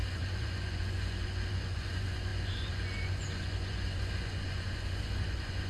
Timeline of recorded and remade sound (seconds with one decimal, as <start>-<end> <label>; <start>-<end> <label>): 0.0-5.7 remade